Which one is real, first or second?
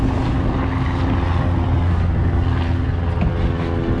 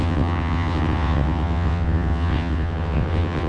first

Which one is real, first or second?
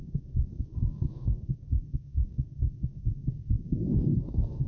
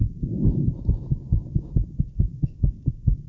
second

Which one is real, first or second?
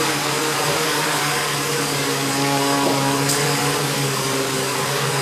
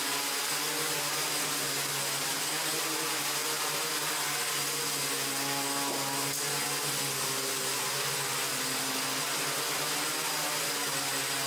second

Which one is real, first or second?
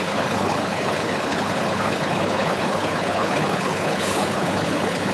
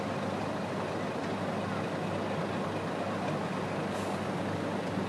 second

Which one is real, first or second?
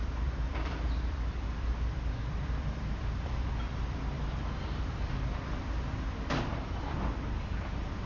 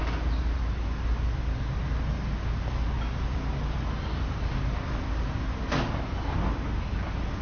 second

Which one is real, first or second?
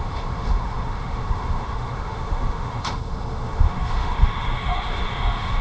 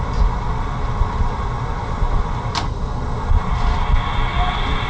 second